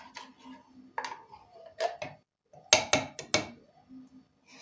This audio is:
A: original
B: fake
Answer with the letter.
A